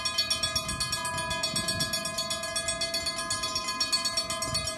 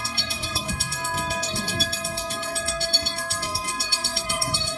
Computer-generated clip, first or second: second